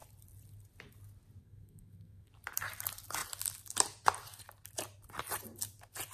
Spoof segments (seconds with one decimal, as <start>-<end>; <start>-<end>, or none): 1.4-2.3